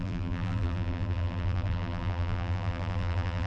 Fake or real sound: fake